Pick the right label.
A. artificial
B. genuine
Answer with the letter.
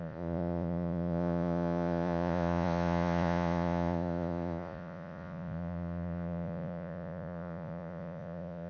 A